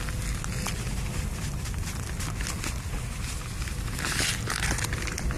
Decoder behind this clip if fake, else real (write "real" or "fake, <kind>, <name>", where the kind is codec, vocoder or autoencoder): real